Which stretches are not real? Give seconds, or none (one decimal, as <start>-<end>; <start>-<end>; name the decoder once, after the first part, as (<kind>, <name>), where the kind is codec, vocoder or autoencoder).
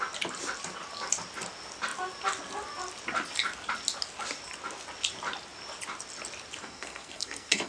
6.6-7.7 (codec, SNAC)